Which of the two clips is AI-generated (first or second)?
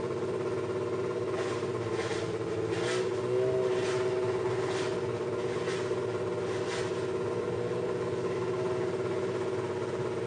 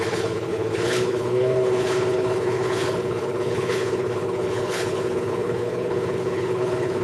second